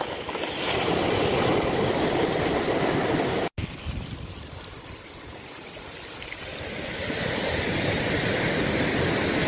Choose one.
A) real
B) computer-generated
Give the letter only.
A